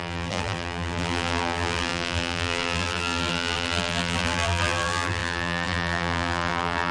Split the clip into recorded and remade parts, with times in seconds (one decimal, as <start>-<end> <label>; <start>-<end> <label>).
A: 0.0-6.9 remade

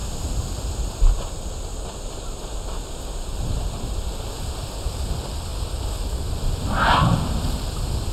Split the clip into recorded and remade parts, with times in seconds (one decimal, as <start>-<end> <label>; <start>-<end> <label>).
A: 0.0-3.3 recorded; 3.3-4.7 remade; 4.7-8.1 recorded